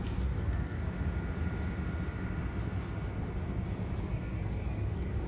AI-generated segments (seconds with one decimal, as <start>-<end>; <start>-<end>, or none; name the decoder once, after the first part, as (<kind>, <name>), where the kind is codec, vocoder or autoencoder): 0.0-0.8 (codec, SNAC); 4.0-5.3